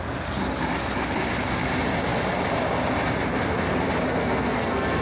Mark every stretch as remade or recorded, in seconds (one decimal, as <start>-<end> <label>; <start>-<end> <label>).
0.0-4.1 recorded; 4.1-5.0 remade